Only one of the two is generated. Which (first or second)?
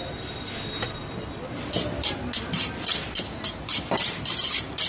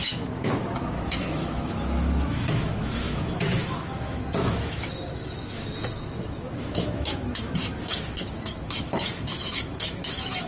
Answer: second